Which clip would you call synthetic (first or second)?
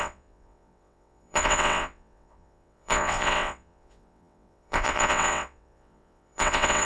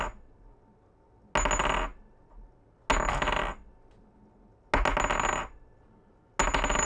first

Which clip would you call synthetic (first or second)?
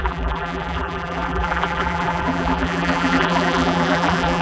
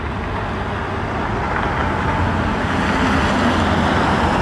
first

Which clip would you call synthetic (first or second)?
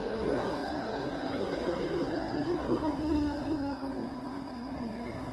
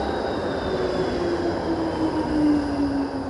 first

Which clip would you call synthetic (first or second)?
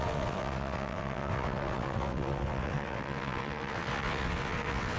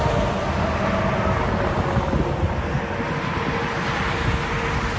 first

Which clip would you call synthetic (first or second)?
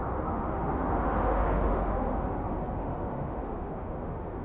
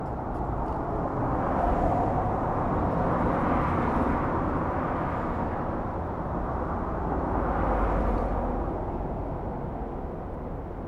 first